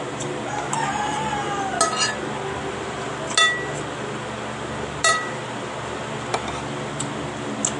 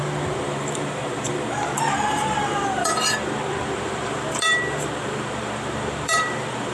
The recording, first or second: first